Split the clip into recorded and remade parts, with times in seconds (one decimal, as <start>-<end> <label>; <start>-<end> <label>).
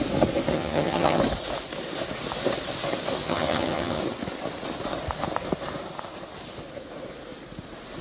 0.0-0.5 recorded; 0.5-1.2 remade; 1.2-3.2 recorded; 3.2-4.0 remade; 4.0-8.0 recorded